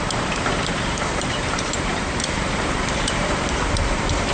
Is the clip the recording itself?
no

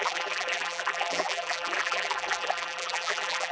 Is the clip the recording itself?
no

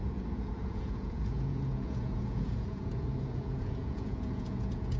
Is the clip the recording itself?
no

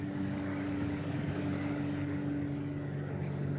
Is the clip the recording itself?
no